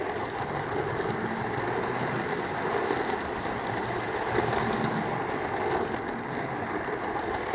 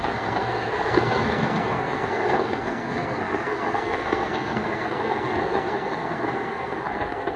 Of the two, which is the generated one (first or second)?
second